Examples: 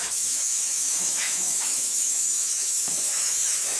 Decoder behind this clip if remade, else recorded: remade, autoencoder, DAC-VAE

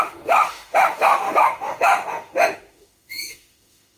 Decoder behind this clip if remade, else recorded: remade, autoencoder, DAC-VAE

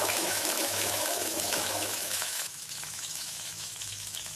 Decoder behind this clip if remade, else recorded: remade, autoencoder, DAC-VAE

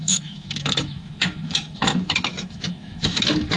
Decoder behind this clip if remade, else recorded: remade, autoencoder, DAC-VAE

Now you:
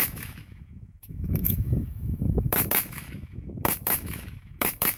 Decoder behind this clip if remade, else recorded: remade, autoencoder, DAC-VAE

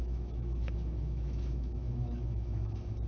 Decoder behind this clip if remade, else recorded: remade, autoencoder, DAC-VAE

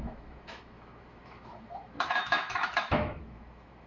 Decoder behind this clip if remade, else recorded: remade, autoencoder, DAC-VAE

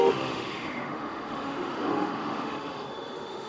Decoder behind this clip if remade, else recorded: remade, autoencoder, DAC-VAE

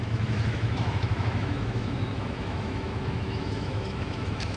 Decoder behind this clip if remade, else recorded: remade, autoencoder, DAC-VAE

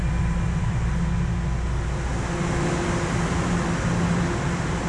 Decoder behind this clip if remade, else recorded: recorded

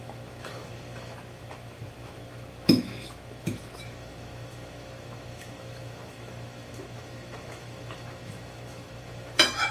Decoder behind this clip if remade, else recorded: remade, autoencoder, DAC-VAE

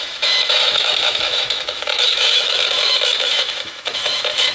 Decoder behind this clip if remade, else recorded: remade, autoencoder, DAC-VAE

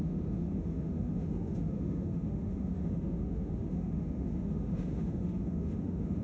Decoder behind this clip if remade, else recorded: remade, autoencoder, DAC-VAE